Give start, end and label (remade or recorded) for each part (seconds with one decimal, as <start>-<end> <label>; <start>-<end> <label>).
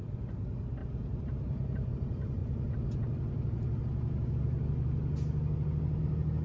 0.0-0.8 recorded; 0.8-1.9 remade; 1.9-6.4 recorded